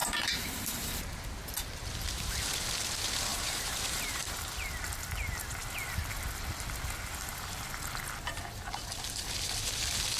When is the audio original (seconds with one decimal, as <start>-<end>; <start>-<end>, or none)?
1.2-3.3; 4.5-10.2